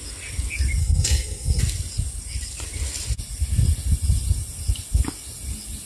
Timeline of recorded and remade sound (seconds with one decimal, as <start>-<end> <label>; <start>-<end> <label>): 0.0-0.8 recorded; 0.8-1.6 remade; 1.6-5.9 recorded